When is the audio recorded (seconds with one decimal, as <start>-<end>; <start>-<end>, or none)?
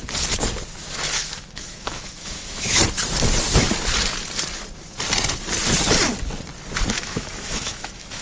0.0-1.1; 2.8-6.9